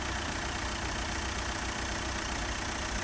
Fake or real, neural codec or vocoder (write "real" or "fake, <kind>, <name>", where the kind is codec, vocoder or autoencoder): fake, vocoder, BigVGAN v2